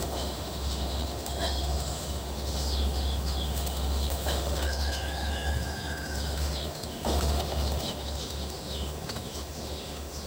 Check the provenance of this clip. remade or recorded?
remade